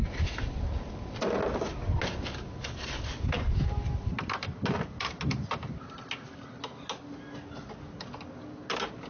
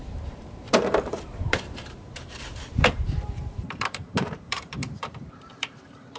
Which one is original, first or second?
first